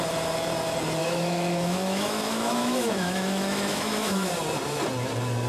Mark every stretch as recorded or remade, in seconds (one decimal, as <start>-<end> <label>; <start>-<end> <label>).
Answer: 0.0-1.0 recorded; 1.0-4.3 remade; 4.3-5.5 recorded